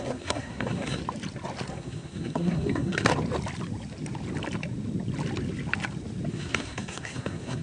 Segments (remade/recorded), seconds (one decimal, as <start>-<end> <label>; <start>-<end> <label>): 0.0-1.0 remade; 1.0-1.7 recorded; 1.7-3.1 remade; 3.1-6.3 recorded; 6.3-7.6 remade